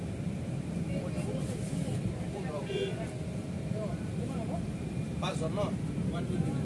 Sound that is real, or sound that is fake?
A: fake